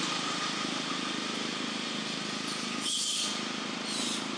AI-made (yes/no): no